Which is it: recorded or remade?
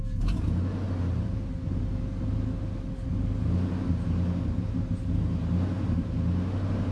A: recorded